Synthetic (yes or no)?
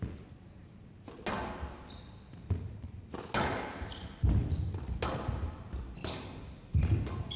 no